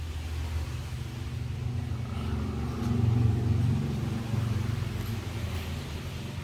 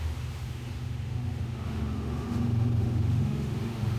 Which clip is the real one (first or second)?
first